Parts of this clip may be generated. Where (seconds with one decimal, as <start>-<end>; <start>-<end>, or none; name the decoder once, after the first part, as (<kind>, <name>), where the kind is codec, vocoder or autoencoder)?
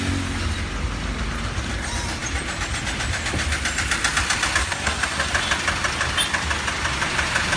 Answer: 4.6-5.3 (codec, SNAC)